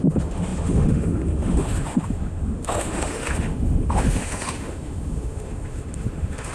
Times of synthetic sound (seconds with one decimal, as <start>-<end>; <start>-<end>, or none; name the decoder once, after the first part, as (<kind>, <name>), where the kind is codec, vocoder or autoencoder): 0.0-6.5 (autoencoder, DAC-VAE)